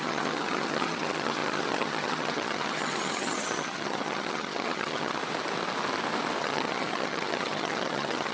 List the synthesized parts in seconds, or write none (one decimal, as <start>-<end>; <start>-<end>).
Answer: 0.0-5.2; 6.4-8.3